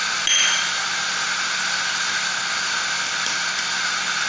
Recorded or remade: recorded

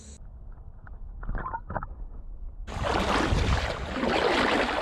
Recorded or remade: recorded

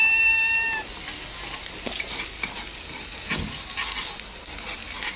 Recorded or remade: recorded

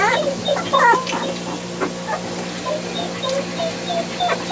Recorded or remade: recorded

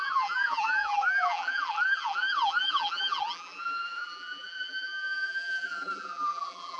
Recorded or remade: remade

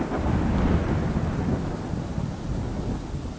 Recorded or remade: remade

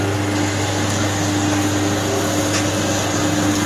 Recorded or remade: recorded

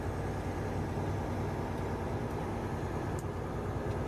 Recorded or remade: recorded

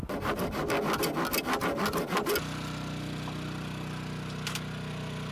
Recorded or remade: recorded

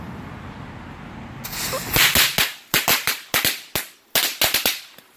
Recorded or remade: recorded